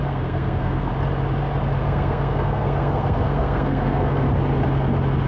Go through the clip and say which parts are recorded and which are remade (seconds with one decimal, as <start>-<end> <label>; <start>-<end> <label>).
0.0-0.9 remade; 0.9-1.8 recorded; 1.8-4.3 remade; 4.3-5.3 recorded